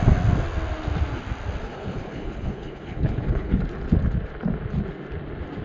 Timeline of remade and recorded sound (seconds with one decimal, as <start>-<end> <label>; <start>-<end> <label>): 0.0-1.6 recorded; 1.6-3.6 remade; 3.6-5.6 recorded

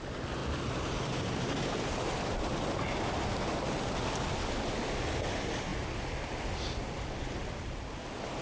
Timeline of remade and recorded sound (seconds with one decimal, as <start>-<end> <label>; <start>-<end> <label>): 0.0-8.4 recorded

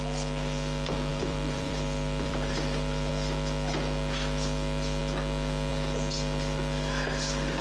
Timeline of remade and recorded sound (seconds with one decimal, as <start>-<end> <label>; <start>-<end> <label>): 0.0-1.1 recorded; 1.1-3.1 remade; 3.1-7.6 recorded

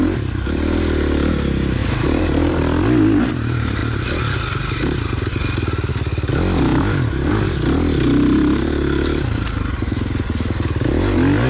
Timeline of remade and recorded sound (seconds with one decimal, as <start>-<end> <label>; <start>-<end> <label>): 0.0-1.8 recorded; 1.8-2.6 remade; 2.6-11.5 recorded

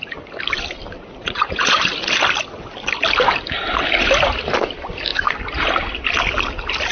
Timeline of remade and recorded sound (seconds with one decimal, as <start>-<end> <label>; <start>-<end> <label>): 0.0-1.2 recorded; 1.2-1.8 remade; 1.8-6.9 recorded

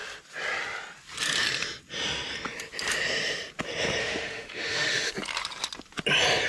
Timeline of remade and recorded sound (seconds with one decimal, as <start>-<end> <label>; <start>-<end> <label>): 0.0-4.0 recorded; 4.0-5.1 remade; 5.1-6.5 recorded

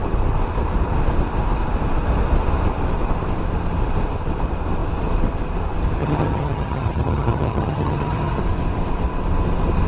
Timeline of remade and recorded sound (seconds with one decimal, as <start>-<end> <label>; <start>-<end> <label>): 0.0-6.0 recorded; 6.0-8.4 remade; 8.4-9.9 recorded

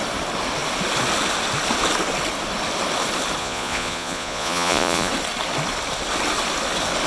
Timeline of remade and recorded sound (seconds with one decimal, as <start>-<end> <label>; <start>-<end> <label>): 0.0-3.4 recorded; 3.4-5.1 remade; 5.1-7.1 recorded